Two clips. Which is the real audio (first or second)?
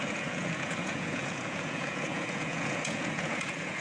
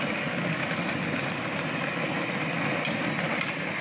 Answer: second